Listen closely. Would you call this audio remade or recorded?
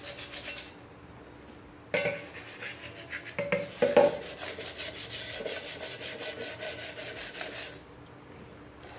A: recorded